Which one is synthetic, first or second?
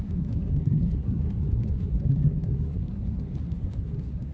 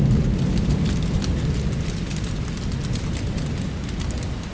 first